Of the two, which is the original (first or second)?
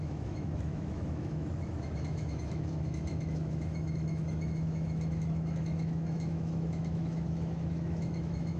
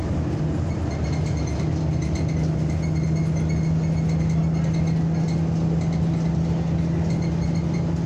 second